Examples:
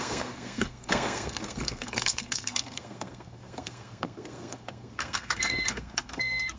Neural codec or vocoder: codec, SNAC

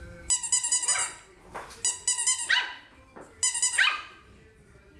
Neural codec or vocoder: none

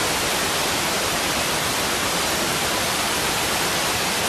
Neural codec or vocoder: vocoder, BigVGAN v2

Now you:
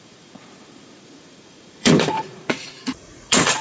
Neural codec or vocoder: vocoder, Vocos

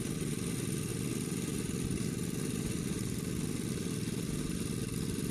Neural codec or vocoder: none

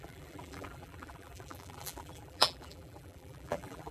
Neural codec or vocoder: vocoder, BigVGAN v2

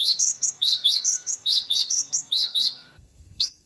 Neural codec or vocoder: codec, SNAC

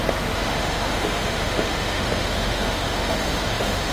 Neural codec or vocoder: autoencoder, DAC-VAE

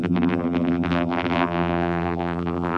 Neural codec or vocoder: vocoder, BigVGAN v2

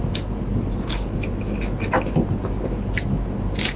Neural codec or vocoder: none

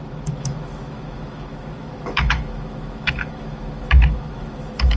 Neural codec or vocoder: autoencoder, DAC-VAE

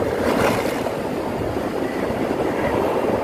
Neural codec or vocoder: none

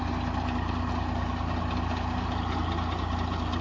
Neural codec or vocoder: none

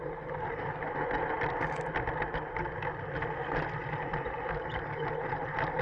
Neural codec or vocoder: none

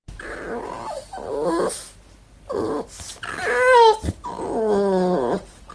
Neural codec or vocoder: none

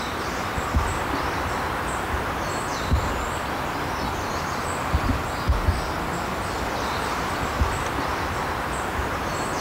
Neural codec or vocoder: none